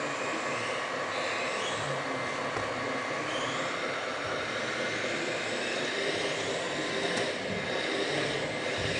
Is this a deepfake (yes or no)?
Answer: no